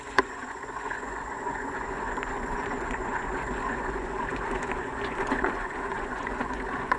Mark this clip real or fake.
fake